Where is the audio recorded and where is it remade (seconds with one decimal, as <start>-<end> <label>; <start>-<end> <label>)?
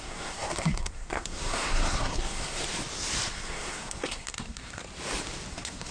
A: 0.0-2.6 remade; 2.6-3.3 recorded; 3.3-4.8 remade; 4.8-5.5 recorded; 5.5-5.9 remade